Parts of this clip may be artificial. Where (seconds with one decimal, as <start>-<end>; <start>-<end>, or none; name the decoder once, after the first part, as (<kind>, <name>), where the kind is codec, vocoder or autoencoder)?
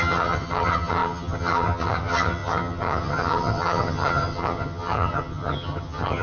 0.0-6.2 (vocoder, HiFi-GAN)